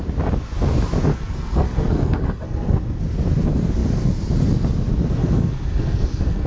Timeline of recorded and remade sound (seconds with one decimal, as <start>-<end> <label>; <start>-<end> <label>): 0.0-1.1 recorded; 1.1-3.0 remade; 3.0-5.2 recorded; 5.2-6.5 remade